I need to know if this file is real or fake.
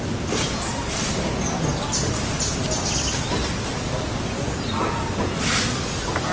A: real